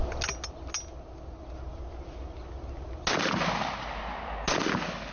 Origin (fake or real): real